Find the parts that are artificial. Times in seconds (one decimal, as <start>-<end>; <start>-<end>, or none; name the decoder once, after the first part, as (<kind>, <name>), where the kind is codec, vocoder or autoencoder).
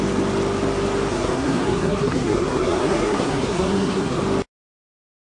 1.1-4.2 (codec, SNAC)